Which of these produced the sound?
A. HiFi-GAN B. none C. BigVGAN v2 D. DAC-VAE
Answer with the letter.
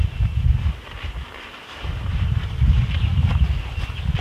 B